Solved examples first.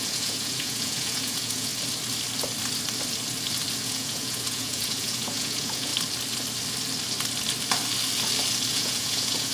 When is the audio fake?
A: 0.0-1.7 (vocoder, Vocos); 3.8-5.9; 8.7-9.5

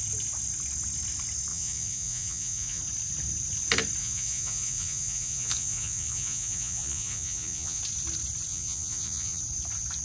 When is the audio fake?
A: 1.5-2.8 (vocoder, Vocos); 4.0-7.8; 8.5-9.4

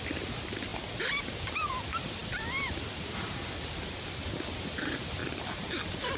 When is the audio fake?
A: none

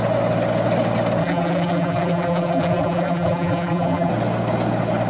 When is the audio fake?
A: 1.2-4.1 (vocoder, BigVGAN v2)